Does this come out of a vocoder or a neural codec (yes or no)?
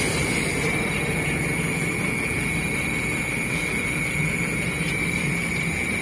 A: no